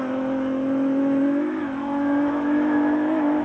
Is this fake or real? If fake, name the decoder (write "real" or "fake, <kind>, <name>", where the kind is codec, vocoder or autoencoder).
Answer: fake, autoencoder, DAC-VAE